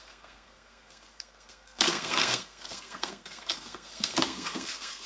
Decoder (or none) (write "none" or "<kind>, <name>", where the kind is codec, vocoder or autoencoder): codec, SNAC